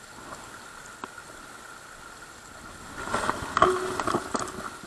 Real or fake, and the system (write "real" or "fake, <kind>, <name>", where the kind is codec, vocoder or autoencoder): real